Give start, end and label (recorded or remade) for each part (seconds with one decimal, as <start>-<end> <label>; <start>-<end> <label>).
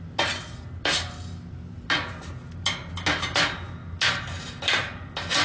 0.0-5.4 recorded